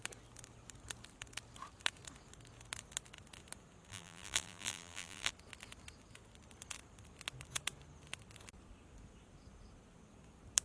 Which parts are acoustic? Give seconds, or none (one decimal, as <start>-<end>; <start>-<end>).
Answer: 0.0-3.9; 5.3-10.6